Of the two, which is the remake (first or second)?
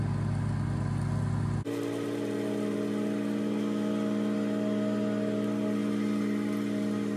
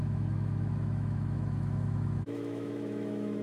second